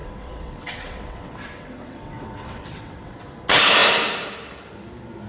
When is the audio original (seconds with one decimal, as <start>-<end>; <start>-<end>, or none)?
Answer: 3.2-5.3